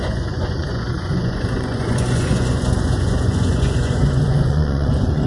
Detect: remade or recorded remade